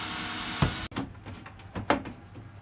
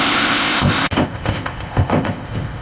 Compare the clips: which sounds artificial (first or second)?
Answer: second